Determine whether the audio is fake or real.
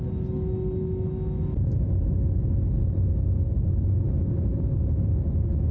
real